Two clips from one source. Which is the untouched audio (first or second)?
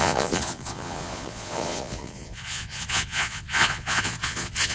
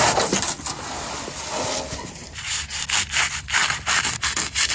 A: second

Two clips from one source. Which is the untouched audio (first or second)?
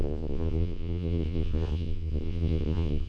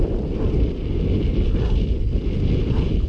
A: second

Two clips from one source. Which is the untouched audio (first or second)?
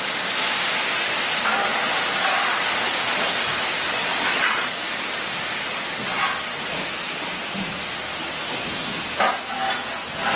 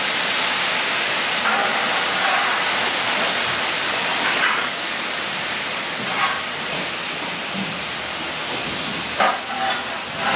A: first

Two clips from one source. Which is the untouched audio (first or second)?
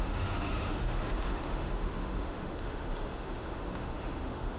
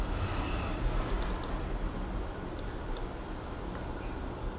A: second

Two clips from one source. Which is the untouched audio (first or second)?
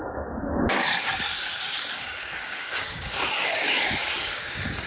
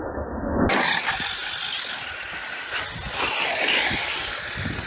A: second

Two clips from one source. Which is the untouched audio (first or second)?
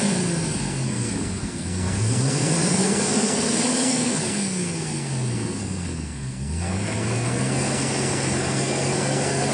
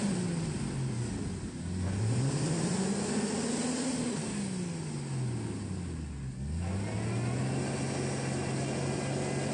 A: second